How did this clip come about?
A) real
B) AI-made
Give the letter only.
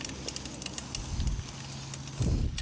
A